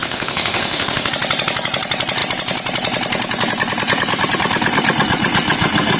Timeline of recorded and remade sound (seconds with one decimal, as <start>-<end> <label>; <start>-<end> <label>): 0.0-1.1 remade; 1.1-6.0 recorded